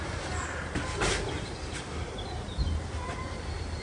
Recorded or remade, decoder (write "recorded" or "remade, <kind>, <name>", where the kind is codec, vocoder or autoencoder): recorded